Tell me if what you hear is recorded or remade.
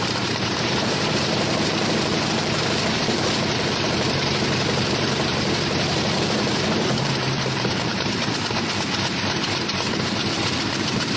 remade